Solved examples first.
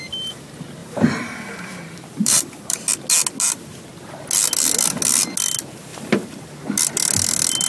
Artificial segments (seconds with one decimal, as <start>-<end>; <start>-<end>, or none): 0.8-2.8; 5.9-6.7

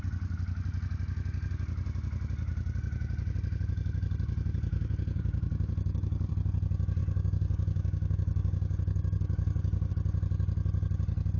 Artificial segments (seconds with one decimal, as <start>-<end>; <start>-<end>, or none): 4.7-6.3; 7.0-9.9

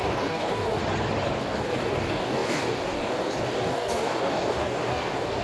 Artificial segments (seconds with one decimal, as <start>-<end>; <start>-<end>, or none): 0.0-0.8; 1.4-5.4